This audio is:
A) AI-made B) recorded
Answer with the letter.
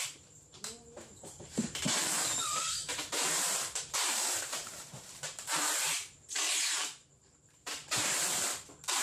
A